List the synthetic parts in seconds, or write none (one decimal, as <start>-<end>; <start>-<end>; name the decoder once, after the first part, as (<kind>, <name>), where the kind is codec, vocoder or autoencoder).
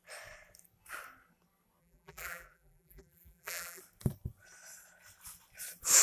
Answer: 1.8-3.8 (vocoder, BigVGAN v2)